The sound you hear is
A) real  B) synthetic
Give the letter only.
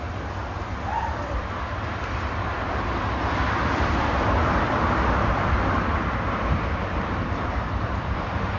B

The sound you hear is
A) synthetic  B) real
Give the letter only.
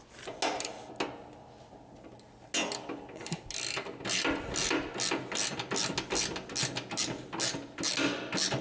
B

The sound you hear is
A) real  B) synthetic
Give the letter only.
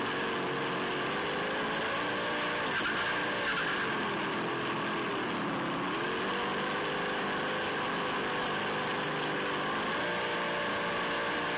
A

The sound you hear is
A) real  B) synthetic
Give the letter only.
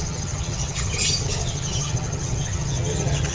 B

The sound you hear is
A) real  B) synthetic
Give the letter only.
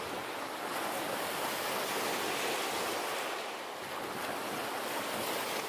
A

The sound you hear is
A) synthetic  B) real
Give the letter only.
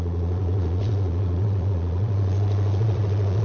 A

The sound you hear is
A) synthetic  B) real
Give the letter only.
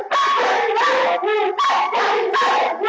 B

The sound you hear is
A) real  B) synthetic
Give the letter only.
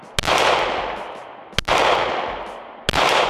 A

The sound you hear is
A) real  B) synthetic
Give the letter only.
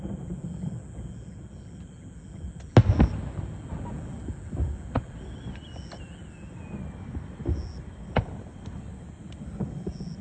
A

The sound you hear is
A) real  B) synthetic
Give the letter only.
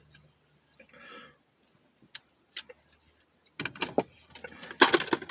A